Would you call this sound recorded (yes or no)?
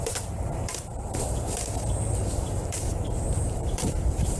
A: no